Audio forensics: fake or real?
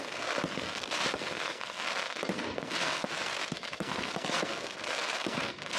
fake